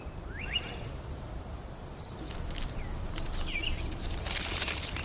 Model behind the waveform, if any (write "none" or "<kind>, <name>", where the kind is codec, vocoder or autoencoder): none